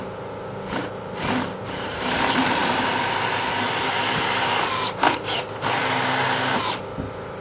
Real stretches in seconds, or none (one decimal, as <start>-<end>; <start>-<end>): 0.0-7.4